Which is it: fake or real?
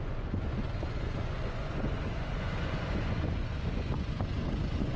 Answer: fake